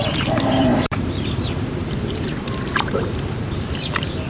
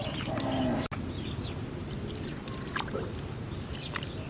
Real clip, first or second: second